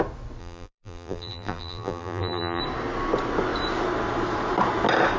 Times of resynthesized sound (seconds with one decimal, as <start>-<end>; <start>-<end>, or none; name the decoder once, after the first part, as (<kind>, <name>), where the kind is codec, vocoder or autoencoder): 0.4-2.6 (vocoder, BigVGAN v2)